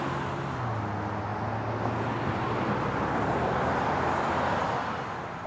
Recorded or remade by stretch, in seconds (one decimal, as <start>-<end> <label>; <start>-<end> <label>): 0.0-5.5 recorded

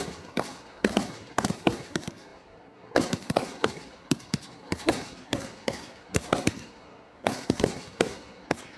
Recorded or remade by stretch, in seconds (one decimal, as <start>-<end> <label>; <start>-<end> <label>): 0.0-8.8 remade

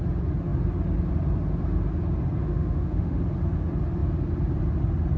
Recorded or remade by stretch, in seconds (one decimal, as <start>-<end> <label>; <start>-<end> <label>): 0.0-2.4 recorded; 2.4-3.2 remade; 3.2-5.2 recorded